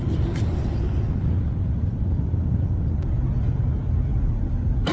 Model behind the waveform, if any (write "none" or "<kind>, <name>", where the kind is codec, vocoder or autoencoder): none